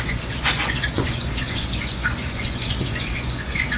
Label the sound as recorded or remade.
remade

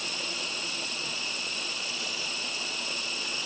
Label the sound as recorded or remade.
remade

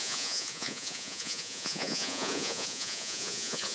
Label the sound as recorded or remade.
remade